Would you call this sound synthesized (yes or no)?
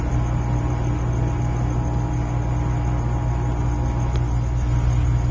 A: no